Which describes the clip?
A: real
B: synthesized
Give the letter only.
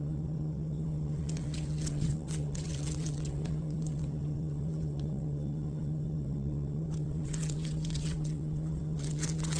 B